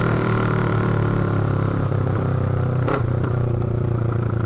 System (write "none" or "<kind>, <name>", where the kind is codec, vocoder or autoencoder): vocoder, BigVGAN v2